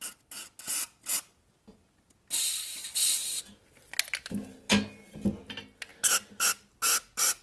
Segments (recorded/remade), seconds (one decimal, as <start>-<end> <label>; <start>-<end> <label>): 0.0-7.4 recorded